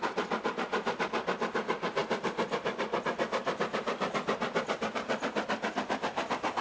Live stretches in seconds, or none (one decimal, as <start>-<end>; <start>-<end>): 0.0-6.6